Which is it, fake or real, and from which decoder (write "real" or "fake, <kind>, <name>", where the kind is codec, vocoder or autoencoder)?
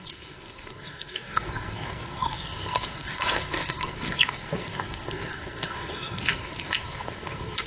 fake, codec, SNAC